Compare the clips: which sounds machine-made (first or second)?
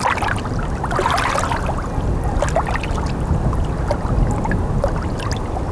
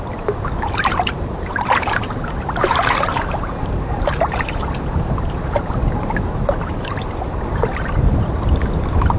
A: second